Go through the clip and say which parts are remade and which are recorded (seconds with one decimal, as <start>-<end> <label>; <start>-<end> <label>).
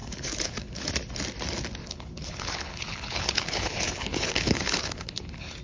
0.0-0.9 remade; 0.9-1.8 recorded; 1.8-5.6 remade